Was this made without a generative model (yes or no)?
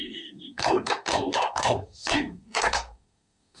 no